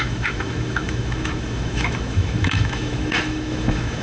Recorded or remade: remade